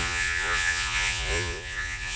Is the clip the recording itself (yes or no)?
no